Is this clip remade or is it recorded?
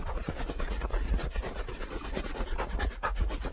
remade